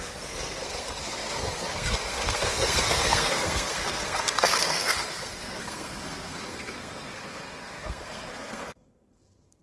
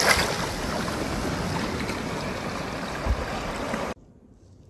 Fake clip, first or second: first